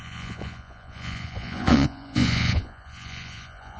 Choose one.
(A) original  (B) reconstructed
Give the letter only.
B